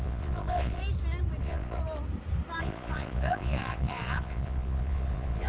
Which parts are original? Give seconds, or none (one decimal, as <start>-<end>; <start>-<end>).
0.8-1.4; 1.8-2.6